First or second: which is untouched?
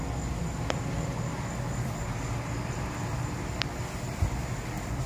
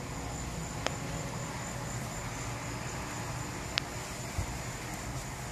second